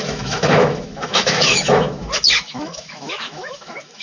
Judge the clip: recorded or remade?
remade